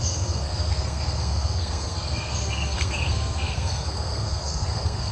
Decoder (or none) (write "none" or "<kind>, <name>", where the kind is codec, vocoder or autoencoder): codec, SNAC